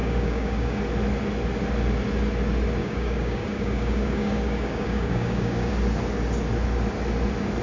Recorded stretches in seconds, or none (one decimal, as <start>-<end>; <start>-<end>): 0.8-2.8; 5.7-7.6